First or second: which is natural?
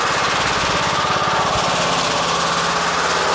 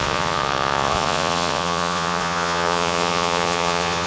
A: first